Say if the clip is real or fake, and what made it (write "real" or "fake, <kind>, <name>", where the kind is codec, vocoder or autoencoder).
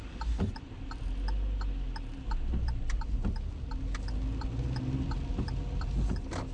real